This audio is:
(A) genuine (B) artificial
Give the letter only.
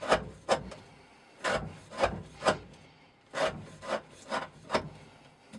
A